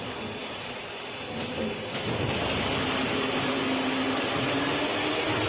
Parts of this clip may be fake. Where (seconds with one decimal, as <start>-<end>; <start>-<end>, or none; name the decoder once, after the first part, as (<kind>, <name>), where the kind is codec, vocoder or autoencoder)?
none

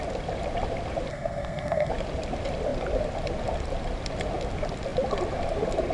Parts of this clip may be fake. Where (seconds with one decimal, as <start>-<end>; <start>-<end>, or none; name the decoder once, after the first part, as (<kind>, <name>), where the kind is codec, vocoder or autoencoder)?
1.1-1.9 (codec, SNAC)